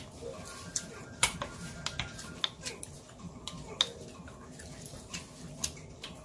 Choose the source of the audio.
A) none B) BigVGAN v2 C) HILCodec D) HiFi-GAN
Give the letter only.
A